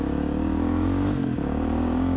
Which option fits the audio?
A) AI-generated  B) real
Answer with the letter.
A